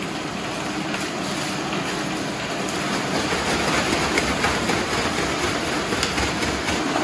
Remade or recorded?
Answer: recorded